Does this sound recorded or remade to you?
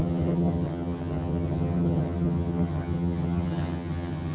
remade